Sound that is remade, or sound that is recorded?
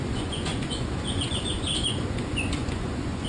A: remade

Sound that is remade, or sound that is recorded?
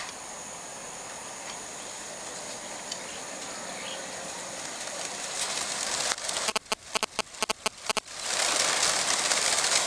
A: recorded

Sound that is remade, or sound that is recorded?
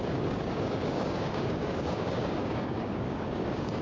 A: remade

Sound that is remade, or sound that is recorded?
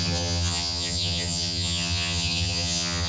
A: remade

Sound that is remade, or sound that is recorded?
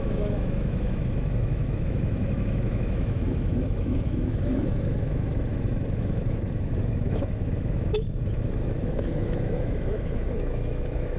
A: remade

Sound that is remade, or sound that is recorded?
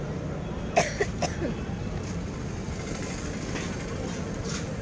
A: recorded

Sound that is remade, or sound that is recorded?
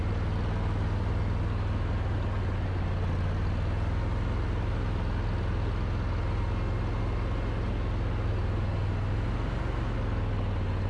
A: recorded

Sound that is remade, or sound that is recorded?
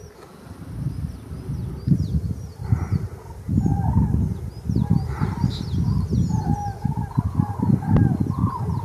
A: recorded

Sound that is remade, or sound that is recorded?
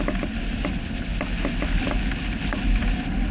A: recorded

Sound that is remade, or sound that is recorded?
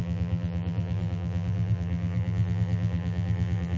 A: remade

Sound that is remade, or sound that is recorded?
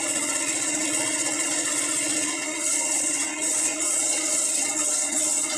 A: remade